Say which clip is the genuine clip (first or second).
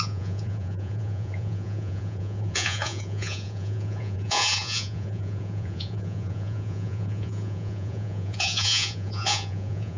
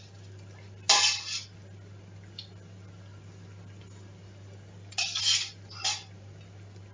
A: second